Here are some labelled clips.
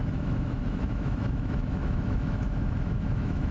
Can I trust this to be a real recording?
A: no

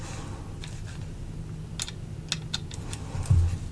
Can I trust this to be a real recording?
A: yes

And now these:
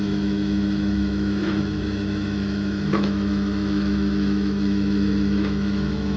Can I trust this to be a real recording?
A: no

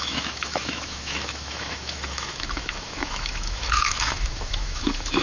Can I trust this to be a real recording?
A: no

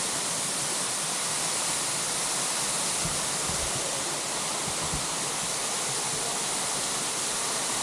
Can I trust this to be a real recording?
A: yes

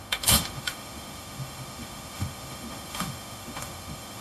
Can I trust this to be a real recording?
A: no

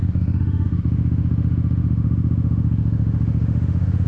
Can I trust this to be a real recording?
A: no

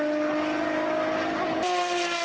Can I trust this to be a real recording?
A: yes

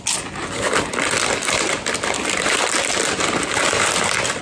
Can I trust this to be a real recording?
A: yes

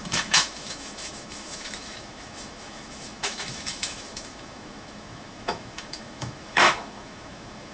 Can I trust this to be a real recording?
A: no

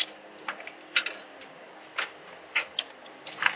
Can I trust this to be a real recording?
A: yes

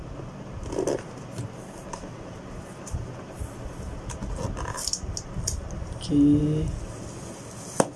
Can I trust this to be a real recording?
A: yes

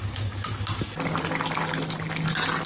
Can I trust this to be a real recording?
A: yes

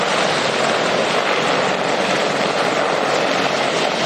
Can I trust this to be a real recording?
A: yes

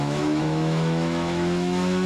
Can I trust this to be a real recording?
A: no